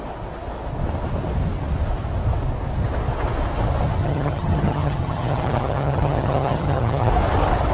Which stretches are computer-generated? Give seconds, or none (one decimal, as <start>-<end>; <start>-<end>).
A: 4.0-7.1